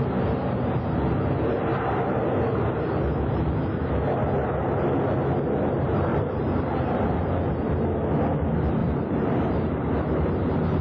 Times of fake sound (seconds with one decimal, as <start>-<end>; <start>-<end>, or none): 6.1-7.6; 8.8-9.9